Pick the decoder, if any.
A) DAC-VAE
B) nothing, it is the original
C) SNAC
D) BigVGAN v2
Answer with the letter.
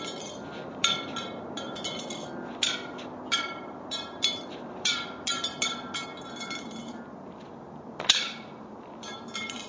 D